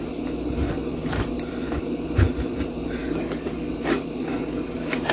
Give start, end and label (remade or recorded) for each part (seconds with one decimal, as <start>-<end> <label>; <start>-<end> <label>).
0.0-3.0 recorded; 3.0-3.7 remade; 3.7-4.3 recorded; 4.3-5.1 remade